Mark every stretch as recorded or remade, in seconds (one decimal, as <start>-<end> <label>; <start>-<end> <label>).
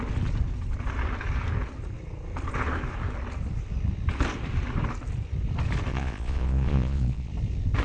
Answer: 0.0-5.9 recorded; 5.9-7.3 remade; 7.3-7.8 recorded